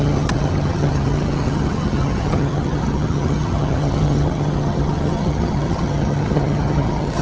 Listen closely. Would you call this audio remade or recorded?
remade